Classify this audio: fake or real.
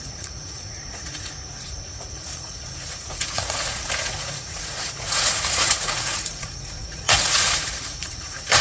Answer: fake